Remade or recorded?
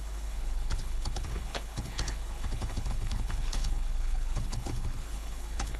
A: remade